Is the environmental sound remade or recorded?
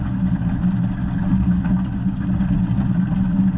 recorded